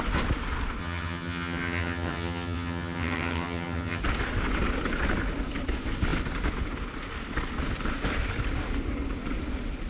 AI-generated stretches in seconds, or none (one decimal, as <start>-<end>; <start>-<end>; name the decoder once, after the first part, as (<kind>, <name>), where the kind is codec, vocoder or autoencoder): 0.8-4.0 (vocoder, HiFi-GAN)